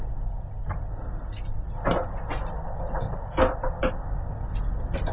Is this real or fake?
real